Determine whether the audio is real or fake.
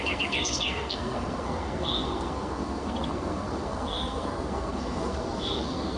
fake